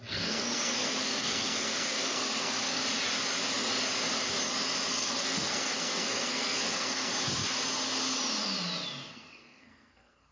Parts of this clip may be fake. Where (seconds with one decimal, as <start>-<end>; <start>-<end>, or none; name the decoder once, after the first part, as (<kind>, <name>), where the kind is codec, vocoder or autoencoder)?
0.0-2.8 (codec, SNAC); 4.9-7.1; 9.1-10.3